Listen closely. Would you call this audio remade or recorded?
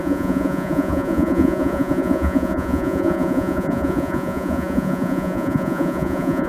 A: remade